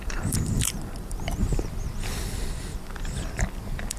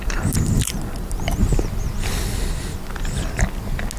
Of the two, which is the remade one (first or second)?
first